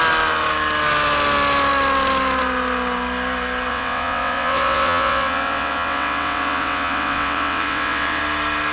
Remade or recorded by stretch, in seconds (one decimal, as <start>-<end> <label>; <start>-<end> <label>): 0.0-3.7 recorded; 3.7-8.2 remade; 8.2-8.7 recorded